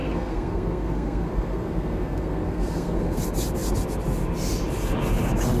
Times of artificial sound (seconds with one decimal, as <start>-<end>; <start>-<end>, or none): 0.0-3.2